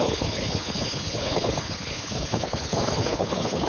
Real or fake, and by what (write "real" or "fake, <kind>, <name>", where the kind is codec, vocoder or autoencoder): fake, codec, HILCodec